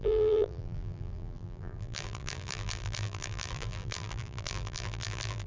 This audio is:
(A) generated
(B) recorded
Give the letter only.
A